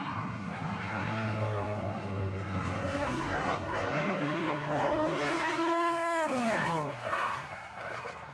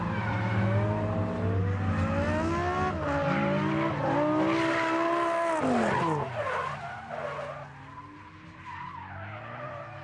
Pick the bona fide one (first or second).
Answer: second